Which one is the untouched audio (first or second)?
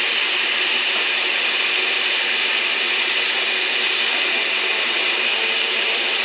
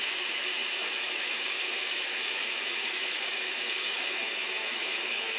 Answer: first